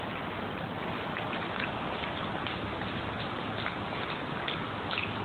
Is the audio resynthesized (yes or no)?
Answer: no